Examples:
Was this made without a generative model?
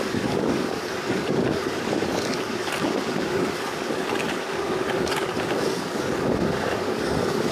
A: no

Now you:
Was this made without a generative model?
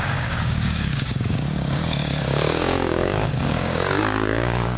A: no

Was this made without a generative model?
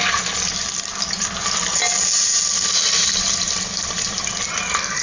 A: yes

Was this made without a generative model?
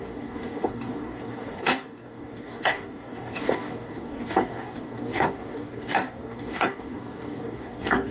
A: no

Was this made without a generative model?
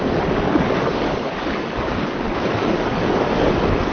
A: no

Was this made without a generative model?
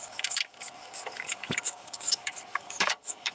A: no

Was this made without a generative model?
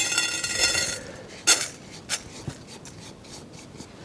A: yes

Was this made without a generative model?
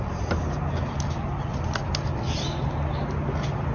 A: yes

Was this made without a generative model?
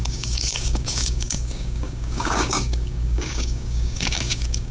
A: no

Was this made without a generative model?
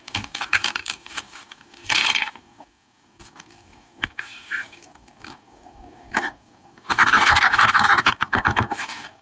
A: no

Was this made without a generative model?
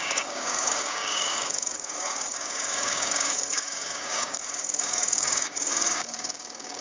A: no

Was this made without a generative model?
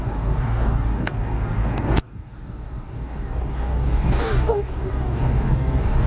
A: no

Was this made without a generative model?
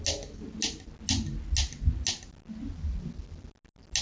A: yes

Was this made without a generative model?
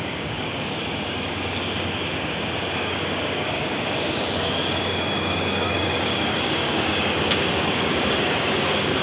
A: no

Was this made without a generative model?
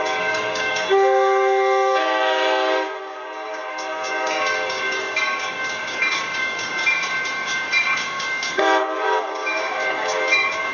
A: no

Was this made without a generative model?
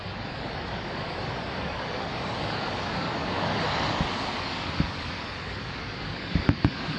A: no